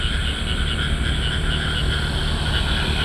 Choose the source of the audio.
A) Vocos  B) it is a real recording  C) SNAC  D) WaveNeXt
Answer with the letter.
B